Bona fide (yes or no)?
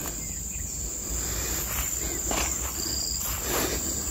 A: yes